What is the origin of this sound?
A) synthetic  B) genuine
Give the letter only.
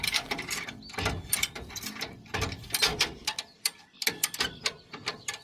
A